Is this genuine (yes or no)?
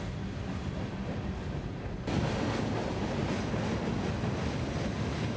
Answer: yes